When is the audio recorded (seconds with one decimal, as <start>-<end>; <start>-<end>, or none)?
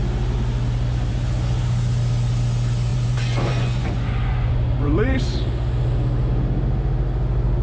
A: 0.0-2.9; 5.2-7.6